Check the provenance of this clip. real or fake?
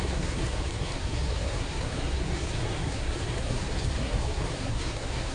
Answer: fake